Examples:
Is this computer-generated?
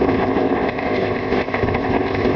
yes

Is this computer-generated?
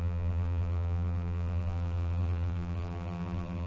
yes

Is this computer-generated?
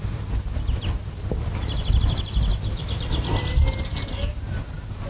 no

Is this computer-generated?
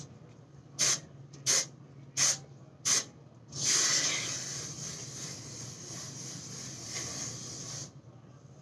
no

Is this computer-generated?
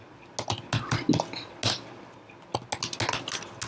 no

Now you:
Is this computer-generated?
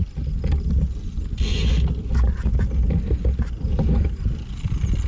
no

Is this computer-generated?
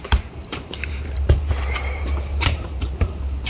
yes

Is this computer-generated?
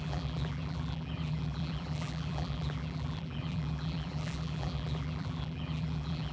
yes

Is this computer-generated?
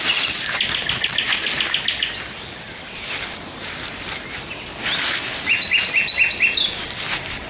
no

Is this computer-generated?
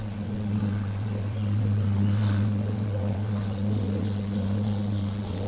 yes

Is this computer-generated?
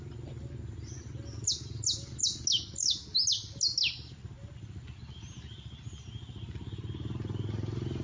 no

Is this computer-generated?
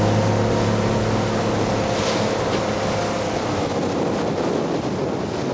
no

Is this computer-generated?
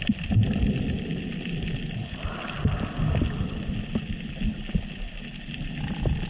no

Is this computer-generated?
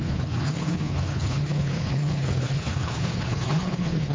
yes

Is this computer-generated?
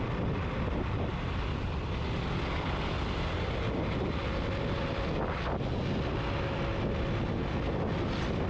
no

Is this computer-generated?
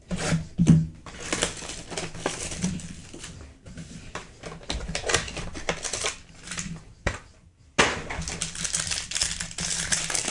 no